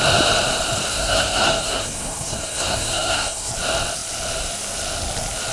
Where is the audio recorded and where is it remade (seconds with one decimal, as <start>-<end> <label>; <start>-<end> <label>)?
0.0-0.9 recorded; 0.9-3.5 remade; 3.5-5.5 recorded